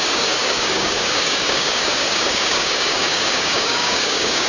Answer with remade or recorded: remade